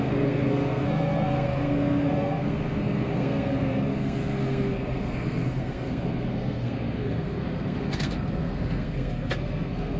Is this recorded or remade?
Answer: remade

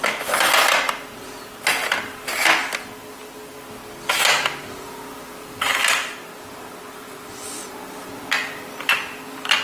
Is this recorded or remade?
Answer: recorded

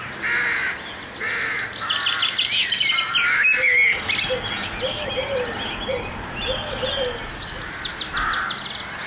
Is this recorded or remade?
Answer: recorded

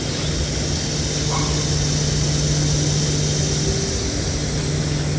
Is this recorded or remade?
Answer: recorded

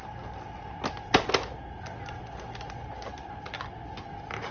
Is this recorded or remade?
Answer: recorded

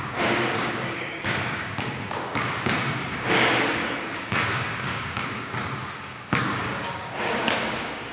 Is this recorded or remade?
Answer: remade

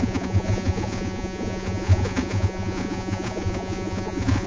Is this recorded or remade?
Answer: remade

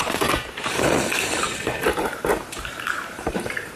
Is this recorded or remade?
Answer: remade